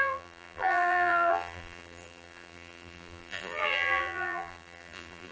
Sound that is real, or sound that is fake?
fake